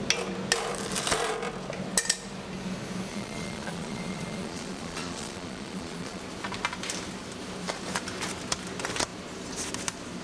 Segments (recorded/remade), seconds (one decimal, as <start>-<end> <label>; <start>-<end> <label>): 0.0-3.1 recorded; 3.1-6.2 remade; 6.2-10.2 recorded